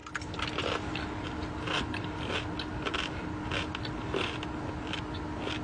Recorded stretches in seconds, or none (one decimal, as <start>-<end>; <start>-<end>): 0.0-5.6